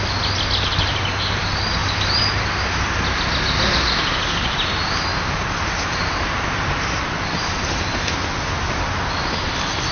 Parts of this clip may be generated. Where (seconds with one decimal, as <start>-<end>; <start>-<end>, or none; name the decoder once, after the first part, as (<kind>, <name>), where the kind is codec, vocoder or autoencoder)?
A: 1.8-2.4 (vocoder, BigVGAN v2); 5.1-8.5

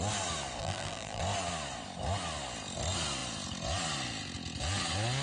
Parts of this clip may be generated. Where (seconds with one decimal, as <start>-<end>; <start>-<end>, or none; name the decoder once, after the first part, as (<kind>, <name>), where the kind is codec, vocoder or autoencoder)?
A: 0.6-1.2 (vocoder, BigVGAN v2)

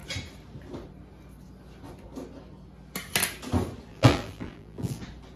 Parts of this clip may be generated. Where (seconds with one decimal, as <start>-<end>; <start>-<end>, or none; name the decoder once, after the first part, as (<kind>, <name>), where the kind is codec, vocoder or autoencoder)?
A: 3.9-5.0 (vocoder, BigVGAN v2)

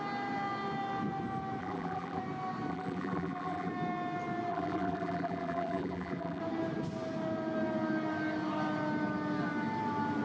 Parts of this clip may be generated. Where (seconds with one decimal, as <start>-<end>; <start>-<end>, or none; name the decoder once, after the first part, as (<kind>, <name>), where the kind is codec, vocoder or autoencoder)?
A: 1.6-2.2 (vocoder, BigVGAN v2); 2.7-3.7; 4.5-6.4

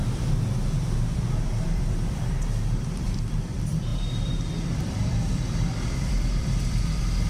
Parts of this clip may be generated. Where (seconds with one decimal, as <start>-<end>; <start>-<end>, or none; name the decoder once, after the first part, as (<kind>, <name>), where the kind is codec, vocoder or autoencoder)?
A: 1.3-7.3 (vocoder, BigVGAN v2)

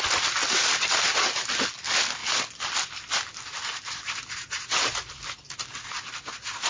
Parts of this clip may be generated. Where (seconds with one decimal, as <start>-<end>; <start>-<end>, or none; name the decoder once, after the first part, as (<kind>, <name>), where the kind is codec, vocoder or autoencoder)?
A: 0.4-1.6 (vocoder, BigVGAN v2)

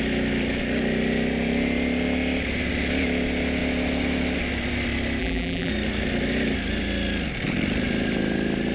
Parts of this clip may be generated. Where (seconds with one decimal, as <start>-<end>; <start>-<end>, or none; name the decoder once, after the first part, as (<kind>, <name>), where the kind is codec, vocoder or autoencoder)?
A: 5.2-5.7 (vocoder, BigVGAN v2)

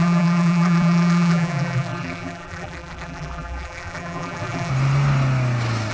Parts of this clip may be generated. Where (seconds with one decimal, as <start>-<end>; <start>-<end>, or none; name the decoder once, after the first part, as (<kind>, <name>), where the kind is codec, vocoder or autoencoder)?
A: 0.0-4.7 (vocoder, BigVGAN v2)